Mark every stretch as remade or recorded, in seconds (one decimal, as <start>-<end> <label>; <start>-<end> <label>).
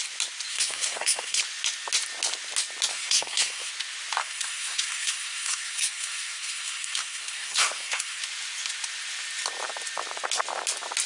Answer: 0.0-0.5 recorded; 0.5-1.4 remade; 1.4-2.9 recorded; 2.9-3.7 remade; 3.7-4.2 recorded; 4.2-8.2 remade; 8.2-11.1 recorded